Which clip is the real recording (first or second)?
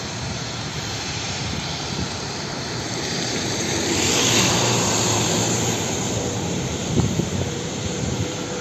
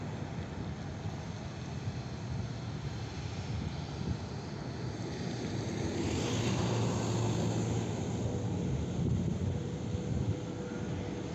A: second